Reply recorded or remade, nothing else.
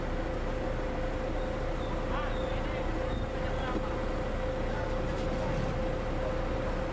recorded